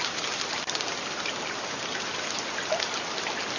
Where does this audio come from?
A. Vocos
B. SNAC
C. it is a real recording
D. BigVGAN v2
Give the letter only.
C